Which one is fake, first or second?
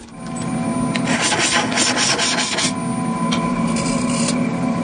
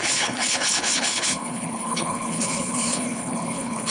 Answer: second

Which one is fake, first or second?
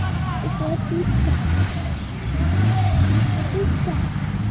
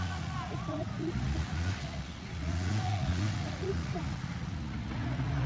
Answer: second